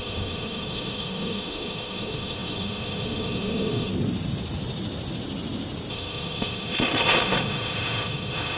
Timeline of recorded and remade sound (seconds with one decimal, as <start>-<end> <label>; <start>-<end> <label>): 0.0-3.9 remade; 3.9-5.9 recorded; 5.9-8.6 remade